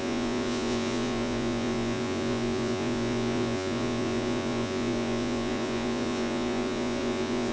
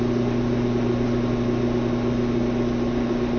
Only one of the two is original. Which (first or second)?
second